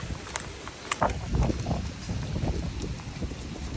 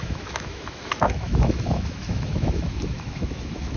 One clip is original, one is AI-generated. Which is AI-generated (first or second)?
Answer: second